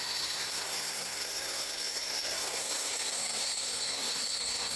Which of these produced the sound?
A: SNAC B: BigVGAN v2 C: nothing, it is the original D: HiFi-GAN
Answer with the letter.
A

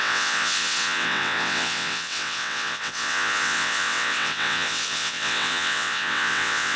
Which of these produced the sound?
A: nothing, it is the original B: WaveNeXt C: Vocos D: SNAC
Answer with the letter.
B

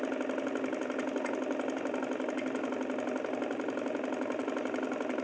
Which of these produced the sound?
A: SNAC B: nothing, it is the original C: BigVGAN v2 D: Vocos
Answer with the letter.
B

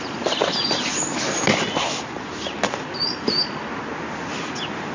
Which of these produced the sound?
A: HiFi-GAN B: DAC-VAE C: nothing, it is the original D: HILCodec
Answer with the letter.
C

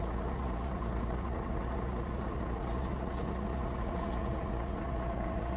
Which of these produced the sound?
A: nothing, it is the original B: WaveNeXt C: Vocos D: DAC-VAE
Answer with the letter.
C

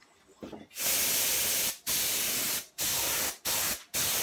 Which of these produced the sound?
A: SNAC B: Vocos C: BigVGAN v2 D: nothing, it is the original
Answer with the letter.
D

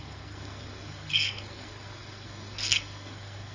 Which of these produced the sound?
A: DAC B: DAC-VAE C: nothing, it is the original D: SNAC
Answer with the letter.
D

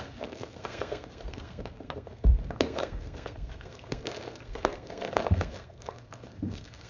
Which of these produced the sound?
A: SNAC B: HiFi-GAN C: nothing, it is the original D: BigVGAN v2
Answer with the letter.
A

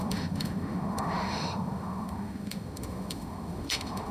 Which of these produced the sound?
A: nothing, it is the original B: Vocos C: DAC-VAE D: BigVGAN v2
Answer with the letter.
C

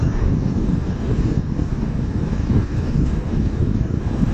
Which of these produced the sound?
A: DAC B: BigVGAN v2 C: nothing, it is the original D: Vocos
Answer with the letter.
A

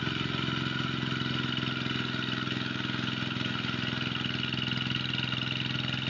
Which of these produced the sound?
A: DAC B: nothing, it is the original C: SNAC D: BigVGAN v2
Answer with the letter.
B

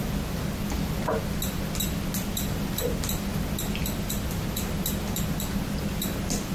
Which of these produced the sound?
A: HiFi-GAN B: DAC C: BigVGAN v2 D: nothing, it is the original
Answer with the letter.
D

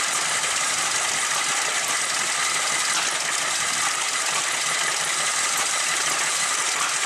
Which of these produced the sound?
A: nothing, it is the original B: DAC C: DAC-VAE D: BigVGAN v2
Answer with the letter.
A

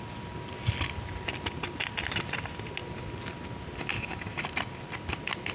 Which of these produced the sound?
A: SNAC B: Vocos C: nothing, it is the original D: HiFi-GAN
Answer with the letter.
C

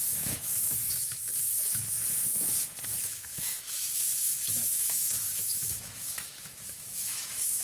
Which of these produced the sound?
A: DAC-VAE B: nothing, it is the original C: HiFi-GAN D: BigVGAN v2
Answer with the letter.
A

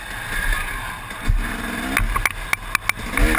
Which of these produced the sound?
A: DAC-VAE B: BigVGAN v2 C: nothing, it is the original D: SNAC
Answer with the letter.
C